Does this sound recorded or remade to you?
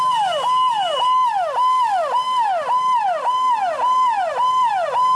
recorded